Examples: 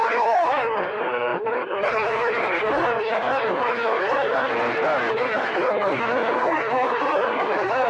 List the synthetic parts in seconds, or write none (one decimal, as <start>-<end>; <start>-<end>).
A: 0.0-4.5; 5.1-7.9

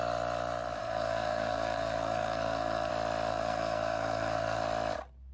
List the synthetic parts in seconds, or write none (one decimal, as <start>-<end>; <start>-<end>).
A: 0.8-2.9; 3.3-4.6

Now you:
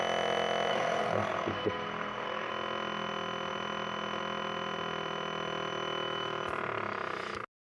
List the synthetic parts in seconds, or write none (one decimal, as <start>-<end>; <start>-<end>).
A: 0.7-2.5

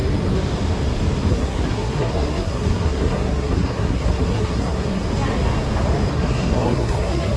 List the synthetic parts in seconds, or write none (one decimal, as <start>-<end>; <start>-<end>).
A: 1.3-5.0; 6.1-7.4

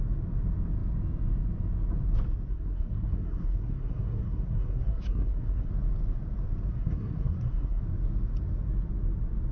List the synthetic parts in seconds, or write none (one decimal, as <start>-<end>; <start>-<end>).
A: 2.5-5.7; 6.7-7.8

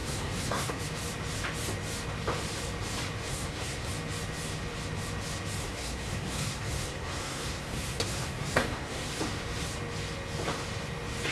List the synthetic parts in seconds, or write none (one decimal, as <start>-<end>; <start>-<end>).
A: 0.0-0.8; 3.2-3.9; 5.6-9.2

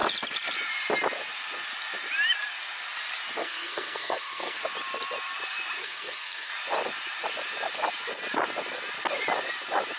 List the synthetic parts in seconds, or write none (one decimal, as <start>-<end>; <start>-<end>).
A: 3.4-4.6; 5.8-6.5

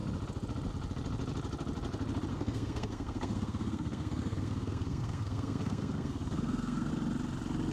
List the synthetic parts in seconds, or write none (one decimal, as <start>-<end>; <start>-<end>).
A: 2.3-6.9